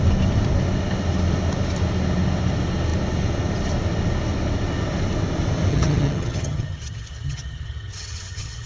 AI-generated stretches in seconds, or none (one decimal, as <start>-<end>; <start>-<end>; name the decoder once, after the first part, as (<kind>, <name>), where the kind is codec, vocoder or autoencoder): 5.7-8.7 (vocoder, HiFi-GAN)